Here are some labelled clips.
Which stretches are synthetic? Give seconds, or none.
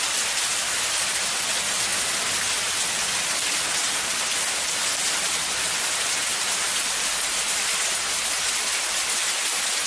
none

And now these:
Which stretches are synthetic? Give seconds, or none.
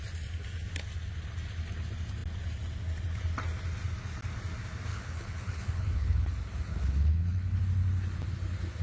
4.9-6.3 (codec, HILCodec); 6.7-7.6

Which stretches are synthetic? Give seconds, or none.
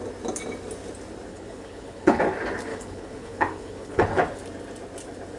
1.3-2.2 (codec, HILCodec); 2.7-4.2